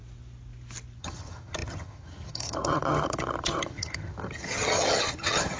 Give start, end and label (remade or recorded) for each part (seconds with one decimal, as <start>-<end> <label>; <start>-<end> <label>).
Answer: 0.0-1.0 recorded; 1.0-5.6 remade